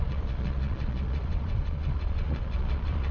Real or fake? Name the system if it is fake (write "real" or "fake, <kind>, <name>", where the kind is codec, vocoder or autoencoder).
fake, vocoder, Vocos